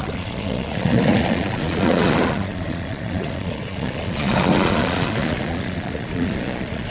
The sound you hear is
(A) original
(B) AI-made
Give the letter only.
B